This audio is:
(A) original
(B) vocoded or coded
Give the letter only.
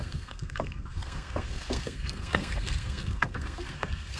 B